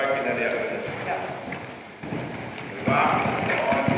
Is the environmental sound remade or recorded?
recorded